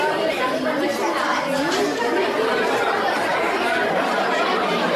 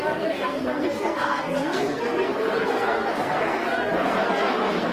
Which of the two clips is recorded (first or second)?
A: first